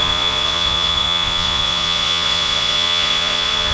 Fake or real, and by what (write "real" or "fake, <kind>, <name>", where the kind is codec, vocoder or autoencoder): fake, vocoder, Vocos